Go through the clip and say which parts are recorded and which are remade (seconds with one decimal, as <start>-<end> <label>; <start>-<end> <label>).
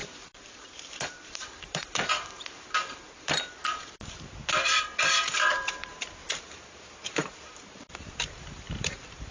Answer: 0.0-4.4 remade; 4.4-5.5 recorded; 5.5-9.3 remade